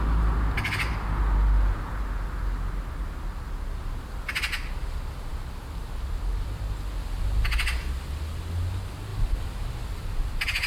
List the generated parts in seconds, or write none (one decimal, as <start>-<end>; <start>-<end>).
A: 9.1-10.0